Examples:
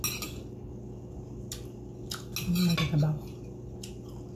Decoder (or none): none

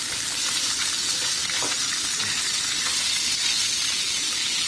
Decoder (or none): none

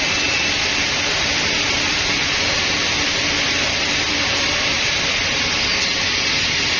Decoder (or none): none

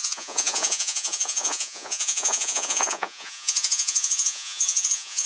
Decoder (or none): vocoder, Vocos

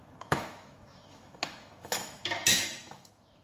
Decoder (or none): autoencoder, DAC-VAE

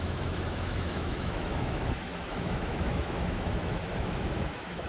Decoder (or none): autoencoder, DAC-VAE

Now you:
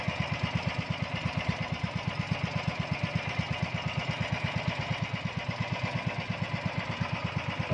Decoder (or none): none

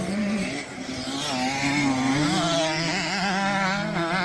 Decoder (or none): none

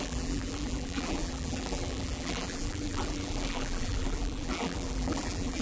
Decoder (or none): vocoder, BigVGAN v2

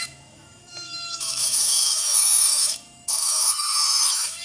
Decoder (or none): autoencoder, DAC-VAE